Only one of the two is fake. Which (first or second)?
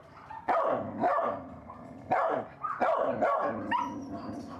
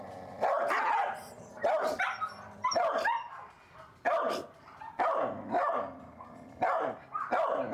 first